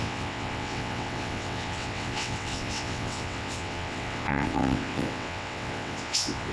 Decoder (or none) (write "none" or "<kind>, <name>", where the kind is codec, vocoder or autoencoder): vocoder, WaveNeXt